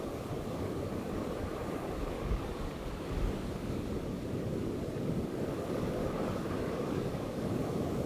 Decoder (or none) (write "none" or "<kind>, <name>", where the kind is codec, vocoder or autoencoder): codec, DAC